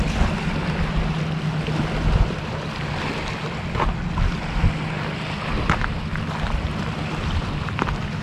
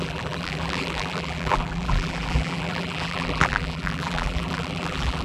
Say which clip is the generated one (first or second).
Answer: second